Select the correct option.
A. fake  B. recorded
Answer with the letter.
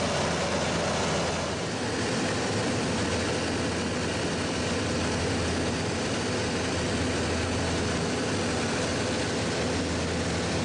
B